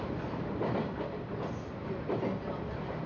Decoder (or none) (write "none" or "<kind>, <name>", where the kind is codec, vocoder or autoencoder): none